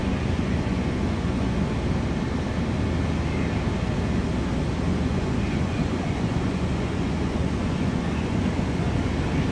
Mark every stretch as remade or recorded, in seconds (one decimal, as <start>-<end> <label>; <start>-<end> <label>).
0.0-1.7 remade; 1.7-4.9 recorded; 4.9-9.1 remade; 9.1-9.5 recorded